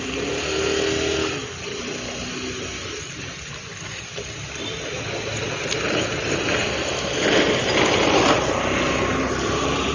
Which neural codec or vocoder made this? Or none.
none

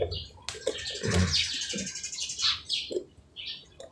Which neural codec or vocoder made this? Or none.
none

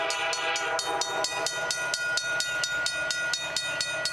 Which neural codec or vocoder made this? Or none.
none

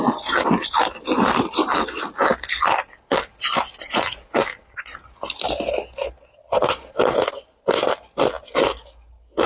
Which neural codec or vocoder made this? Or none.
none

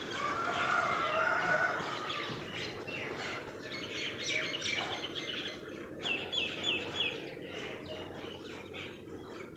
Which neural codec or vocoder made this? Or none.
none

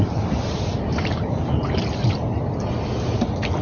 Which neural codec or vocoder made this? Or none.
none